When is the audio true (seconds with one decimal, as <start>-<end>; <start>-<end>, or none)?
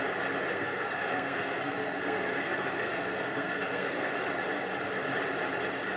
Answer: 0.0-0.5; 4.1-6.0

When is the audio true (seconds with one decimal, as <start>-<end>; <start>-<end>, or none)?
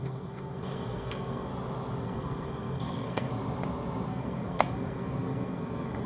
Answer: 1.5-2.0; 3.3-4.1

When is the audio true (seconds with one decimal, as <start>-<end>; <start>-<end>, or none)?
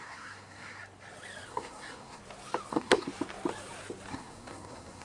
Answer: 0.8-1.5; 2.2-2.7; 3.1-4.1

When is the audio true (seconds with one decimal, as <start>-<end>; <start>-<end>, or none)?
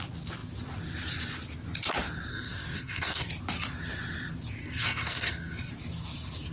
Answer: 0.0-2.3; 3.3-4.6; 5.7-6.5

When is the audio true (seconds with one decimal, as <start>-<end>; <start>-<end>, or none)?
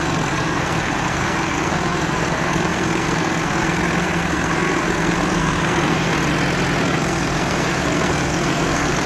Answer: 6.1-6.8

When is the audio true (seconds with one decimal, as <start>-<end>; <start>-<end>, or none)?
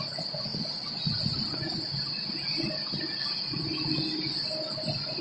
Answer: 0.0-5.2